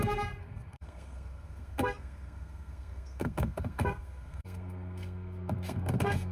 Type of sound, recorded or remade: remade